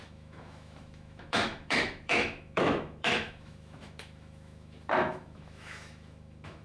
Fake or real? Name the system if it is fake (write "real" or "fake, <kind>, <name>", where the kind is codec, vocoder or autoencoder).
fake, autoencoder, DAC-VAE